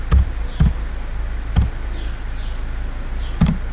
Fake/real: real